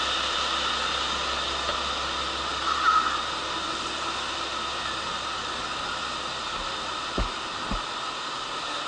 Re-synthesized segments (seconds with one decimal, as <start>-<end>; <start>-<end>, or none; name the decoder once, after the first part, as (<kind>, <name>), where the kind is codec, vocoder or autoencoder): none